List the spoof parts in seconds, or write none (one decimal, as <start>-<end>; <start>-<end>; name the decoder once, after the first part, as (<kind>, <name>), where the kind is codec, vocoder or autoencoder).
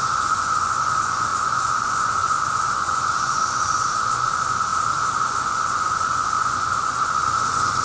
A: 0.0-4.7 (vocoder, Vocos); 5.2-7.8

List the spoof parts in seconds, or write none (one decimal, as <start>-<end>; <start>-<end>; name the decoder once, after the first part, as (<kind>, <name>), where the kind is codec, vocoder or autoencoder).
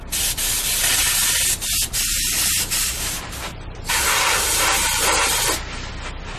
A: 2.1-5.9 (vocoder, BigVGAN v2)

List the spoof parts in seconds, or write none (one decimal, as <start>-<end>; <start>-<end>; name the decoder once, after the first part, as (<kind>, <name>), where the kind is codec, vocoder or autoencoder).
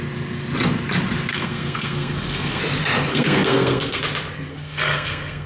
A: 1.3-2.6 (codec, SNAC); 3.1-4.0; 4.5-5.5